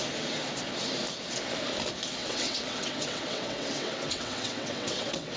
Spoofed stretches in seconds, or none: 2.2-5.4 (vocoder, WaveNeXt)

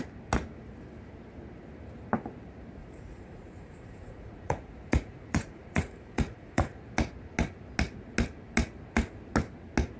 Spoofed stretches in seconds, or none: 2.8-6.8 (vocoder, Vocos)

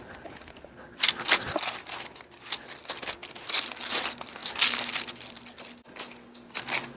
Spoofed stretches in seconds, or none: none

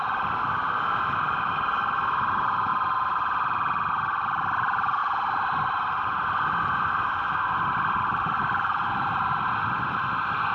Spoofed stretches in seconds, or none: 5.0-9.5 (vocoder, BigVGAN v2)

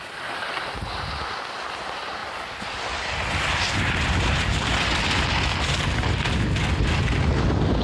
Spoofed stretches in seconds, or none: none

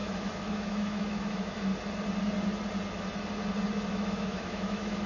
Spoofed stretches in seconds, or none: 0.0-1.7 (autoencoder, DAC-VAE); 3.9-5.1